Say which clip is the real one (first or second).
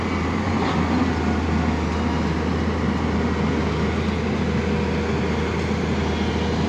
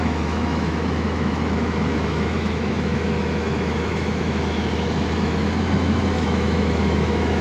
first